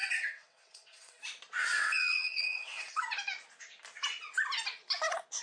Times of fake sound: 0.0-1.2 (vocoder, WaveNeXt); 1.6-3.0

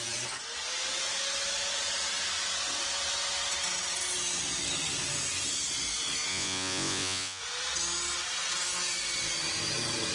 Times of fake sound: 6.3-7.4 (vocoder, Vocos)

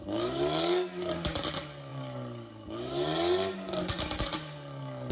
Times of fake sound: 0.0-5.1 (codec, DAC)

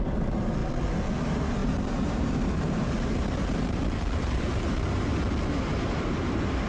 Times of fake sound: 0.0-0.6 (vocoder, BigVGAN v2); 1.2-5.1

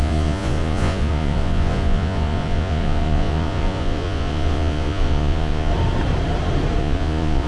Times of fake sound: 0.0-5.7 (vocoder, Vocos); 6.8-7.5

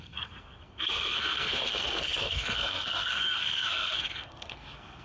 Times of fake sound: 0.0-5.0 (codec, SNAC)

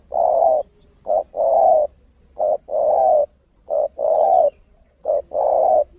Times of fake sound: 3.2-5.1 (vocoder, Vocos)

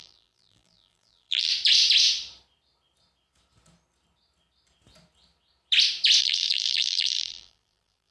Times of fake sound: 0.0-1.5 (vocoder, BigVGAN v2); 6.2-8.1